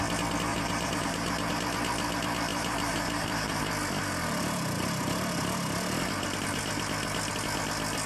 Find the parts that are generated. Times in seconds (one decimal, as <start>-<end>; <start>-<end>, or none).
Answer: 0.5-1.5; 2.5-3.6